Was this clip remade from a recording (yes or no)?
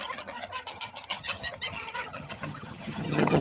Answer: yes